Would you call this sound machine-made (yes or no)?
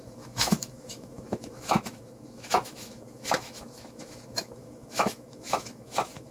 yes